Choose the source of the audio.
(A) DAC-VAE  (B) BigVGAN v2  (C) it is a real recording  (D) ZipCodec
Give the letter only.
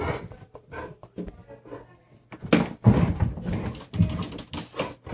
C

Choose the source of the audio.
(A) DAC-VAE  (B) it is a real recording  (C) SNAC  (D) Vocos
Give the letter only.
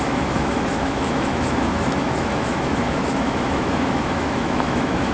A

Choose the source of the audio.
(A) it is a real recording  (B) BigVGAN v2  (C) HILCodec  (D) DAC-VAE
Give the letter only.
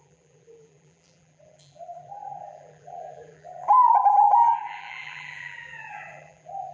B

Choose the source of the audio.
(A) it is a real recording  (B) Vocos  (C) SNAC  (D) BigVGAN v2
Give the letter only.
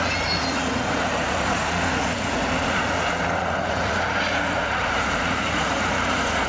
B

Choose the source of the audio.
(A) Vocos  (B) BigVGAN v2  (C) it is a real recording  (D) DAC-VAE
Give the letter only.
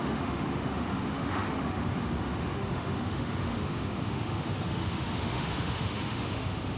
D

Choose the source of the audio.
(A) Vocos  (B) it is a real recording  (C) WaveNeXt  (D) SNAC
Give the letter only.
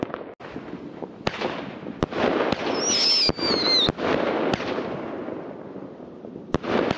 B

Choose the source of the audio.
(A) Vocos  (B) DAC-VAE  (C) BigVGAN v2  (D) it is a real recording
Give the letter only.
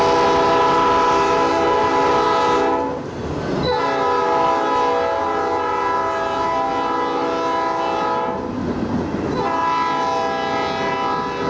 D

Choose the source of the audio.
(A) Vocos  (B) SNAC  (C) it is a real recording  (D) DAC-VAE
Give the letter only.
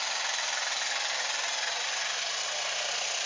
C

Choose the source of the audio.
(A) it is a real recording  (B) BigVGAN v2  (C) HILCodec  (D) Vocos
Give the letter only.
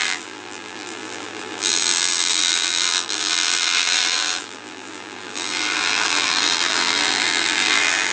B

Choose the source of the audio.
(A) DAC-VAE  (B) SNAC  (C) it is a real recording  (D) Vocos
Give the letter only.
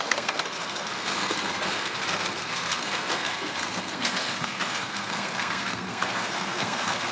B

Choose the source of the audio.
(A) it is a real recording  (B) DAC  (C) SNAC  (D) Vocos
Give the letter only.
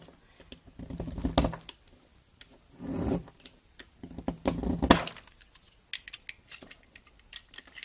A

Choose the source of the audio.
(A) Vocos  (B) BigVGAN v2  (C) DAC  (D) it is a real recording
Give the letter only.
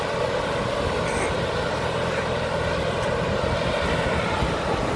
D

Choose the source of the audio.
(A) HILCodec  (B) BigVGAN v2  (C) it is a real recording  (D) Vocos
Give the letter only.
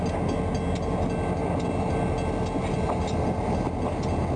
C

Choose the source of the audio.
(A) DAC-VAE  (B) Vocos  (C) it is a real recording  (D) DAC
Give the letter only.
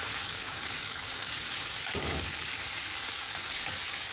D